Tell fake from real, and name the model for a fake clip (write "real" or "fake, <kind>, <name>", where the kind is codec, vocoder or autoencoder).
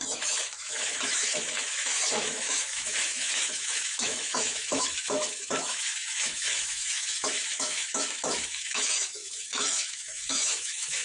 fake, autoencoder, DAC-VAE